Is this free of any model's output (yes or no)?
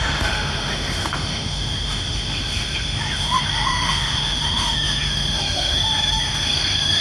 no